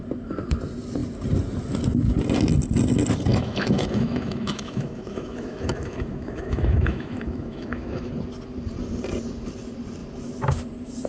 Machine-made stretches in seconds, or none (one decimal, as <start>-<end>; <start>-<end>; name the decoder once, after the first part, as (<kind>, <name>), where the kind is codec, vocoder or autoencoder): 3.3-8.1 (autoencoder, DAC-VAE)